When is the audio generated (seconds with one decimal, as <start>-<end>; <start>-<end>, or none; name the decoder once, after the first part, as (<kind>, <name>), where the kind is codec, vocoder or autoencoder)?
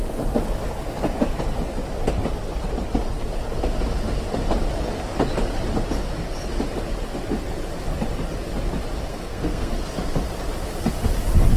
9.1-9.7 (codec, SNAC)